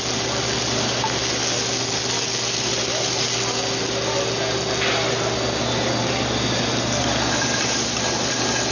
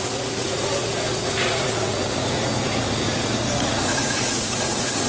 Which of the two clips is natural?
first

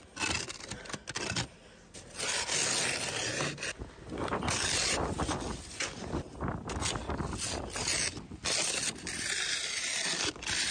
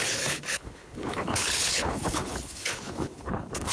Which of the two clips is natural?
first